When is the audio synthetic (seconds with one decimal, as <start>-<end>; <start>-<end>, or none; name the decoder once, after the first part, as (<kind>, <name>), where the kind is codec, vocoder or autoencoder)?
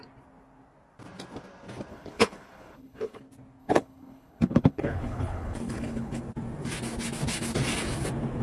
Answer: 1.9-3.2 (codec, HILCodec); 3.6-6.2